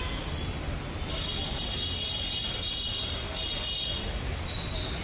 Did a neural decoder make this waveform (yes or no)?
no